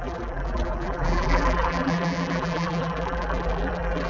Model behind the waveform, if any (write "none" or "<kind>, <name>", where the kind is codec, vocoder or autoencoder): vocoder, BigVGAN v2